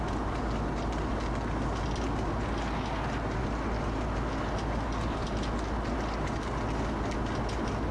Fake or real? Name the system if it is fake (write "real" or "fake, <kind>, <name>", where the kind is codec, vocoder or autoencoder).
real